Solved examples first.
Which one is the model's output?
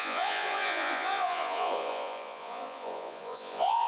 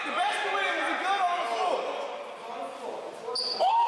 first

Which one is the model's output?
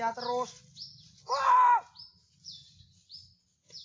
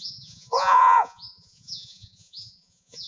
second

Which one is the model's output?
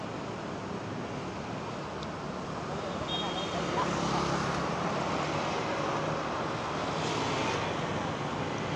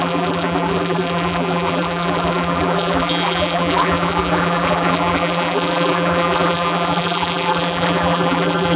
second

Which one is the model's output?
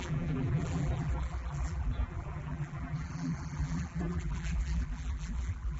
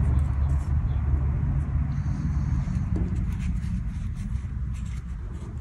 first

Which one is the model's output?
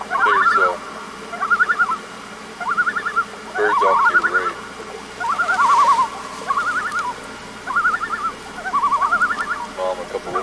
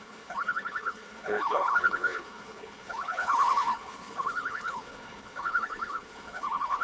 second